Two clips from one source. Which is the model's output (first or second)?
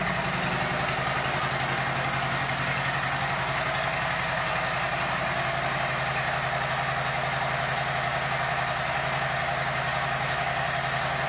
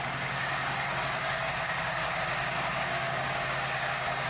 second